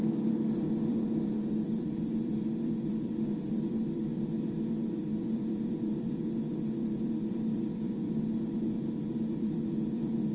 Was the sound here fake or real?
fake